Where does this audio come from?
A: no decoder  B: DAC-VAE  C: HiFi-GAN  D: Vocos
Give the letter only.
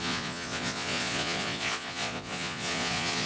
D